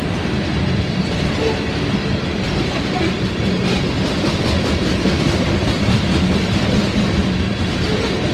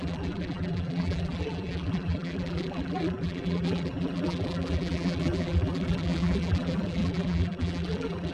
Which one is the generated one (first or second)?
second